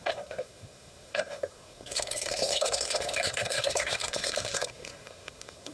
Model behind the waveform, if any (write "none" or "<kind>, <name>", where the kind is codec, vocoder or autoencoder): codec, SNAC